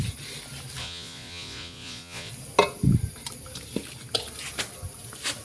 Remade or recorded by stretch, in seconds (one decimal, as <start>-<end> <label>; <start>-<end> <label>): 0.0-0.8 recorded; 0.8-2.3 remade; 2.3-5.4 recorded